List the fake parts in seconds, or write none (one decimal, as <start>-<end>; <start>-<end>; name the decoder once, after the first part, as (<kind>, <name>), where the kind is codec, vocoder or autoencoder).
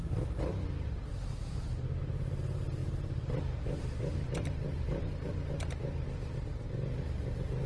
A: 2.8-5.3 (vocoder, BigVGAN v2)